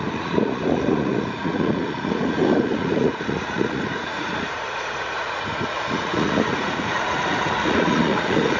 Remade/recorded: remade